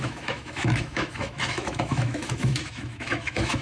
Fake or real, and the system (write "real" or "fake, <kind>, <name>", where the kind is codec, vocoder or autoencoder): fake, autoencoder, DAC-VAE